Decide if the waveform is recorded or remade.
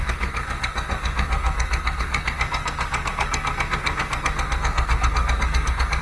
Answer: remade